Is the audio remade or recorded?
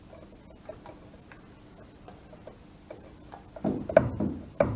recorded